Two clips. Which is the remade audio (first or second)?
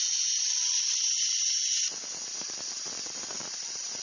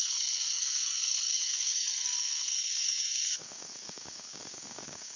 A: second